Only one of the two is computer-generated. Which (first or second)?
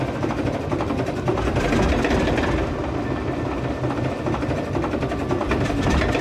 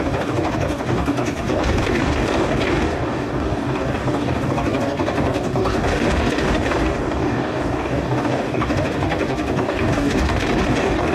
second